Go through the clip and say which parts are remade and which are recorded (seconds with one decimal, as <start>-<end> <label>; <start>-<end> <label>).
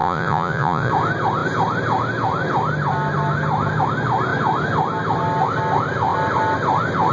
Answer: 0.0-0.9 remade; 0.9-7.1 recorded